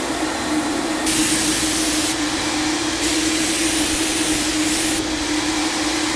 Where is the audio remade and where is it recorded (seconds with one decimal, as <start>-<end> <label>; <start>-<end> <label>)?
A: 0.0-6.2 recorded

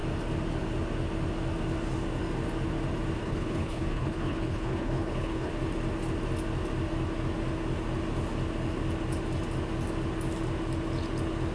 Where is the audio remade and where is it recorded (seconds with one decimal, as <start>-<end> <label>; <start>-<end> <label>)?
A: 0.0-3.2 recorded; 3.2-5.5 remade; 5.5-11.5 recorded